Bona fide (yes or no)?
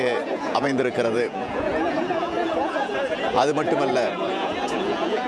no